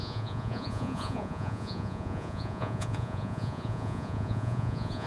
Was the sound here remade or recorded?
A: remade